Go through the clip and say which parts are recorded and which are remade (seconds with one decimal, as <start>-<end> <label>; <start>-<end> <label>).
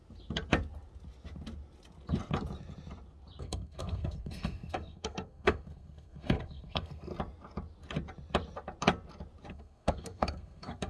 0.0-3.4 recorded; 3.4-7.1 remade; 7.1-9.5 recorded; 9.5-10.9 remade